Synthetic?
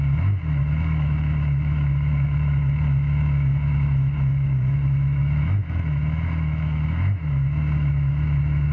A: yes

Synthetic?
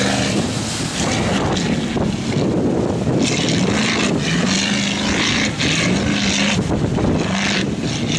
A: no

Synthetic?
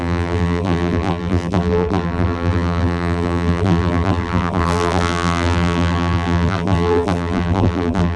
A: yes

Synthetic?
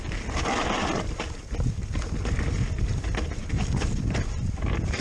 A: no